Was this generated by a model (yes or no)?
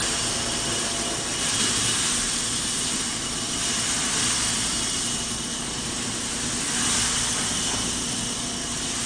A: no